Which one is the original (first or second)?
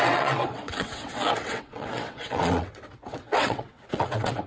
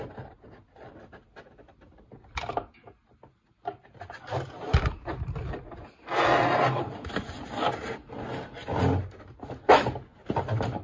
second